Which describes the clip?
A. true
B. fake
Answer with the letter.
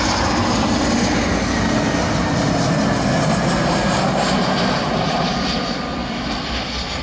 A